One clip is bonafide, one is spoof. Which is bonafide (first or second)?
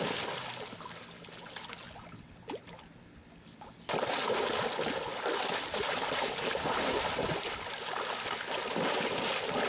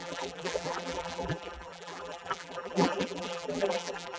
first